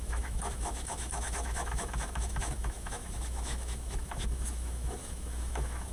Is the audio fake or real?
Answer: fake